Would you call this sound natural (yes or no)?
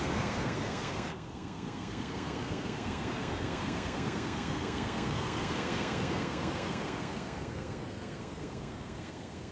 no